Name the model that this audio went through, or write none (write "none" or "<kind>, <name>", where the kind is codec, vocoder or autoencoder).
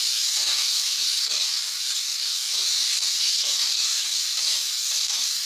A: codec, DAC